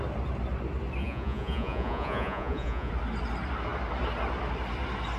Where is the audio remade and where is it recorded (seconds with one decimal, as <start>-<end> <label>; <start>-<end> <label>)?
0.0-1.0 recorded; 1.0-2.9 remade; 2.9-5.2 recorded